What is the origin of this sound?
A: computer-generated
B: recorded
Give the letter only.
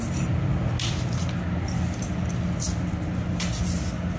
B